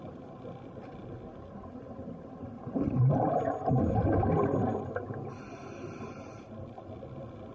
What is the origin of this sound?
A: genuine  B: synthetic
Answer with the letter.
A